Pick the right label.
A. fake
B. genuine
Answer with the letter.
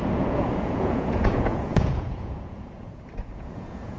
A